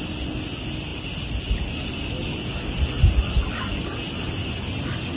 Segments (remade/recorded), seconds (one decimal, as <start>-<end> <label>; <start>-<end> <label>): 0.0-5.2 recorded